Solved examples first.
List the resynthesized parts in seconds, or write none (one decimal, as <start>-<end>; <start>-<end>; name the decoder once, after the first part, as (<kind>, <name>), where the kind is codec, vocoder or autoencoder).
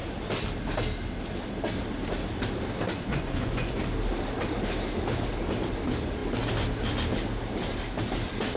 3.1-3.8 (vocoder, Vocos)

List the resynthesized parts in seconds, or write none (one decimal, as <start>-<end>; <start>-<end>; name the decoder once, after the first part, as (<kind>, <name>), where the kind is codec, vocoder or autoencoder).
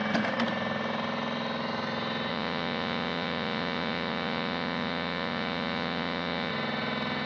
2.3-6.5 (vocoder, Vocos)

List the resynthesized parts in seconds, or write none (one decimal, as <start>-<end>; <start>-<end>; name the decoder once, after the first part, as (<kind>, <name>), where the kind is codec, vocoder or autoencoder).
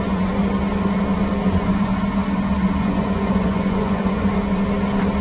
0.0-0.4 (vocoder, Vocos); 1.5-1.9; 2.8-4.3